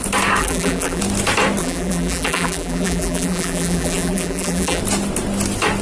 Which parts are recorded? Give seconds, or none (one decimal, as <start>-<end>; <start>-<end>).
0.0-0.4; 1.0-1.6; 4.8-5.8